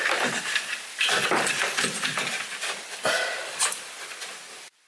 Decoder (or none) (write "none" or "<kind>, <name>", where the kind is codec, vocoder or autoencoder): vocoder, BigVGAN v2